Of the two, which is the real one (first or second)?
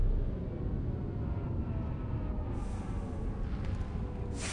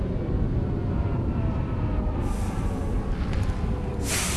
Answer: first